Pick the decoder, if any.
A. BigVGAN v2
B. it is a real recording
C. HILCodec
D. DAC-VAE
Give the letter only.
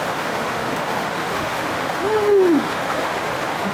D